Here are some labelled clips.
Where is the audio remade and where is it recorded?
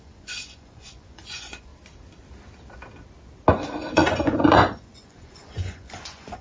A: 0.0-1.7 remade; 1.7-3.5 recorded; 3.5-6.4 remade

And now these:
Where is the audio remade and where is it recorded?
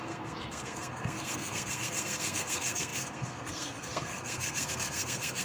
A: 0.0-5.4 remade